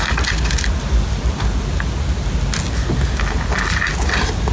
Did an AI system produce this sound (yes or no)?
no